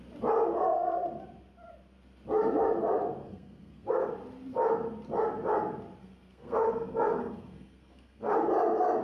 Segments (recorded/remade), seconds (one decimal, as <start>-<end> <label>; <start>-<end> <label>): 0.0-3.2 recorded; 3.2-4.1 remade; 4.1-6.0 recorded; 6.0-8.3 remade; 8.3-9.0 recorded